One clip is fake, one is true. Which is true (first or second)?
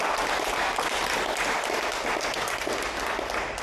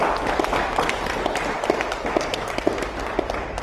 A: first